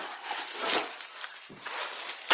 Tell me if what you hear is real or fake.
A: real